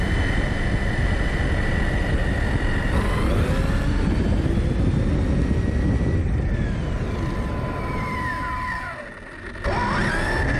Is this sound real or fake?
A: real